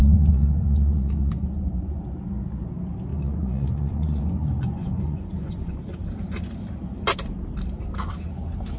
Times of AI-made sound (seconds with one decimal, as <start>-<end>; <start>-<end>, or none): 0.0-2.0; 3.1-5.8